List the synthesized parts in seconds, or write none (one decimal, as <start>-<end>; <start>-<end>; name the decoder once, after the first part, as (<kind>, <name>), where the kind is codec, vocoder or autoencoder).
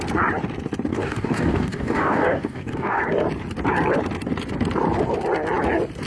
0.9-3.0 (codec, DAC)